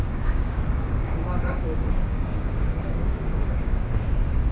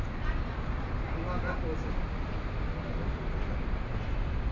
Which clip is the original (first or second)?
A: second